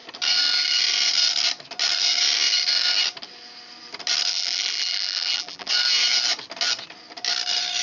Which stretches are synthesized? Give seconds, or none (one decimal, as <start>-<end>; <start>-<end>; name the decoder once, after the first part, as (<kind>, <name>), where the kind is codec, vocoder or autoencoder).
4.3-5.7 (vocoder, BigVGAN v2)